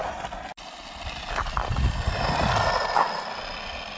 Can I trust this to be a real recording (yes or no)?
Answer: yes